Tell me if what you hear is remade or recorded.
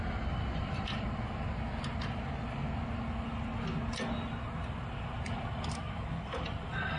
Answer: recorded